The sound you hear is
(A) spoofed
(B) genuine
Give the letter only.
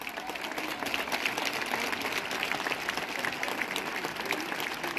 B